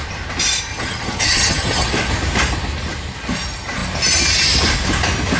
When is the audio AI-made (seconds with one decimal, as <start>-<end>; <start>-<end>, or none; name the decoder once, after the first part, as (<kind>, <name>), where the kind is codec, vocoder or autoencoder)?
0.7-1.9 (vocoder, HiFi-GAN)